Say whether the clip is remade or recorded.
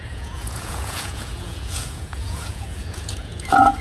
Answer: remade